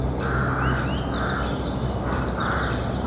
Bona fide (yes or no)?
yes